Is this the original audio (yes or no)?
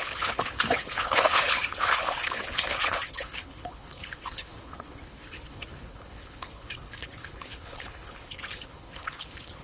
no